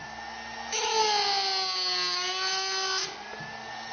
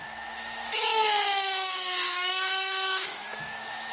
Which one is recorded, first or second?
first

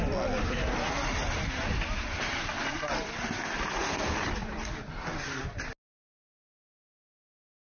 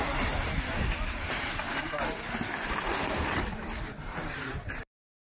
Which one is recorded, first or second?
first